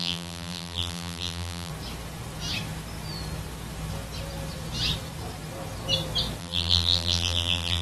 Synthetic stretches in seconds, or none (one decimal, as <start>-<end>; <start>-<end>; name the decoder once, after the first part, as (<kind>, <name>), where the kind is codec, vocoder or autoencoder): 0.0-1.7 (vocoder, BigVGAN v2); 6.4-7.8